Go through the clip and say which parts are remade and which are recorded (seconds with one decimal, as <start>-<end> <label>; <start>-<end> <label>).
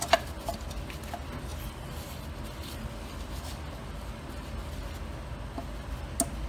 0.0-6.5 recorded